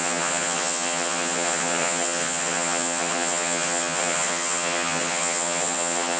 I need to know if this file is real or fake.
fake